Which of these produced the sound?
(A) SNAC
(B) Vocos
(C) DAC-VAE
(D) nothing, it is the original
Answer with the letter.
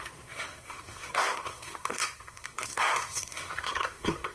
A